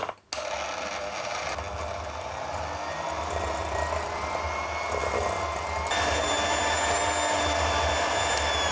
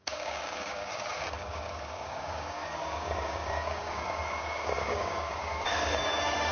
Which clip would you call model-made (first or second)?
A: second